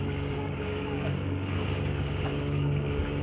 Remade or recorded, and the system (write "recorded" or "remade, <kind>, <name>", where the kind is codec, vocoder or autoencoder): remade, codec, DAC